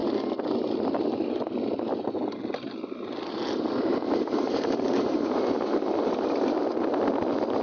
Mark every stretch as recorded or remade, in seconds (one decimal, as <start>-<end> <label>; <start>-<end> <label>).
0.0-7.6 recorded